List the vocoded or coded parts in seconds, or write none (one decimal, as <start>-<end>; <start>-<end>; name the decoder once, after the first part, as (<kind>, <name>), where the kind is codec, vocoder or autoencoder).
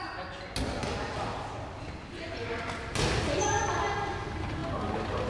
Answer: none